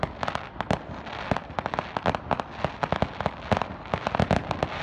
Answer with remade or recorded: recorded